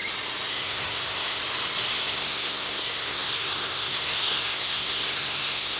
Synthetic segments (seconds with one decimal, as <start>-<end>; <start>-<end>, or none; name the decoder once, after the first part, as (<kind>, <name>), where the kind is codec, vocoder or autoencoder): 0.5-1.4 (codec, SNAC); 2.0-5.8